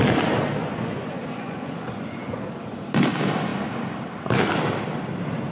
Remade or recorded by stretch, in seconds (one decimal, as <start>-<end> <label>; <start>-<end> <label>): 0.0-0.6 recorded; 0.6-2.4 remade; 2.4-5.5 recorded